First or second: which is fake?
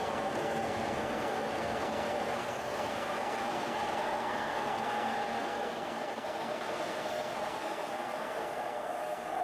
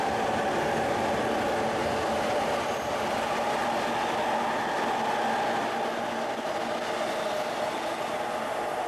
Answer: first